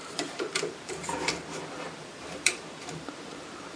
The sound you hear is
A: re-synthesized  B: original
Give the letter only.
A